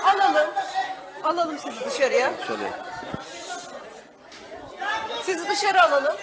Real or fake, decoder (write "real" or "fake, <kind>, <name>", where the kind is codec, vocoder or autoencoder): fake, vocoder, BigVGAN v2